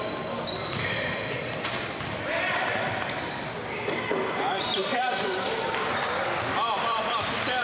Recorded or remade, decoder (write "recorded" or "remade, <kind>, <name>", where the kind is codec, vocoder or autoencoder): remade, vocoder, BigVGAN v2